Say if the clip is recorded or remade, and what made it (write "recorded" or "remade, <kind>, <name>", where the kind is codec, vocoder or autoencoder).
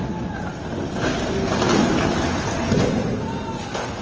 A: recorded